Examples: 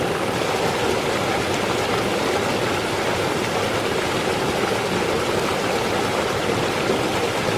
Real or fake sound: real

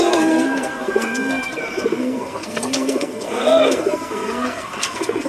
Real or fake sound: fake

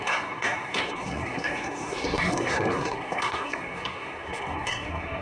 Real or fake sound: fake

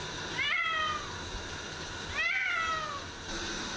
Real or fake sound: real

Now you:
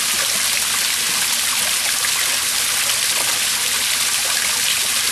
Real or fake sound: real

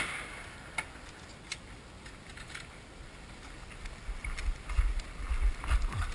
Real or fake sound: real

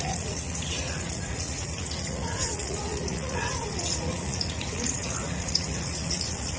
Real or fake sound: fake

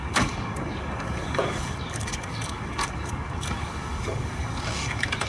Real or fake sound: fake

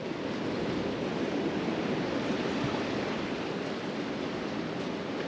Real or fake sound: fake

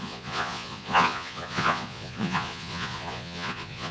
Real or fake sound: fake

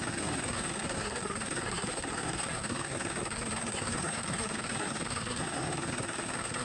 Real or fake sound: fake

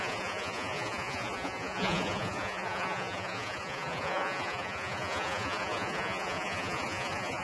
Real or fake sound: fake